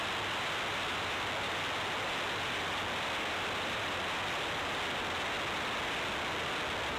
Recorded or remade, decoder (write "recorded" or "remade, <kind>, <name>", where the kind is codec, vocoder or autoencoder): recorded